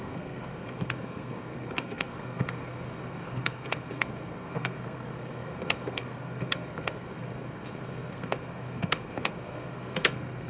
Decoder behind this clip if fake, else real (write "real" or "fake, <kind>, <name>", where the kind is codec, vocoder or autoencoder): fake, codec, SNAC